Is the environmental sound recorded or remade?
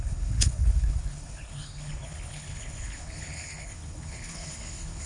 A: remade